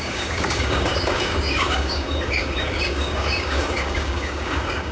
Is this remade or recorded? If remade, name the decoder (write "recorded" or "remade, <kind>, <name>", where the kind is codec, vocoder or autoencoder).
remade, codec, DAC